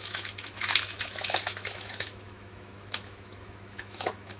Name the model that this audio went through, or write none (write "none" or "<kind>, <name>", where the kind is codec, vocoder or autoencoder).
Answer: autoencoder, DAC-VAE